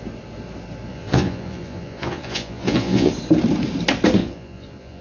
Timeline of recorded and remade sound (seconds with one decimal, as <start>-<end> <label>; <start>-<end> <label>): 0.0-0.9 recorded; 0.9-3.1 remade; 3.1-4.2 recorded; 4.2-5.0 remade